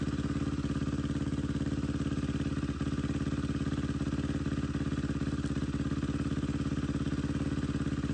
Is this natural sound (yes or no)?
yes